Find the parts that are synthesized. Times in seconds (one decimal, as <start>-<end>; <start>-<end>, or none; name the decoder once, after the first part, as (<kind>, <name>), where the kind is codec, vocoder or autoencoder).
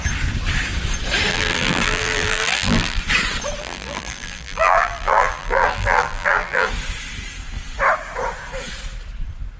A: 1.3-3.0 (vocoder, BigVGAN v2); 3.6-6.7